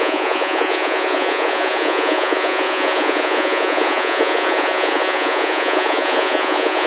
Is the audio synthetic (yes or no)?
yes